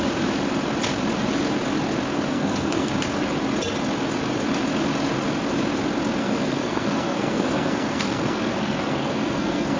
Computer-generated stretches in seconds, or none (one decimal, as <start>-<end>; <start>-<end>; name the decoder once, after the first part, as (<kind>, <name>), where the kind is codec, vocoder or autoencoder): 2.1-2.9 (codec, SNAC); 6.2-9.8